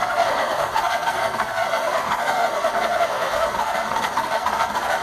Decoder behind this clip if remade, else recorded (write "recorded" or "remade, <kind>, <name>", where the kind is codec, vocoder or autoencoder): remade, codec, SNAC